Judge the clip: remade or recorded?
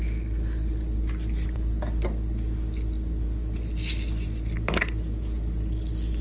recorded